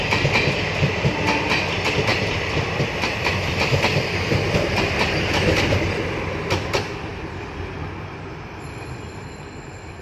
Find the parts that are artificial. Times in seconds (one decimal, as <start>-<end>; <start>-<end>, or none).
none